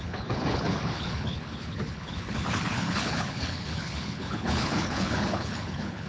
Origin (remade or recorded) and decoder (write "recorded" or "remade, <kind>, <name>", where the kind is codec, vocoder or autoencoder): remade, codec, HILCodec